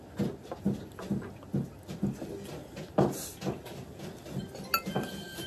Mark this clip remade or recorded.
recorded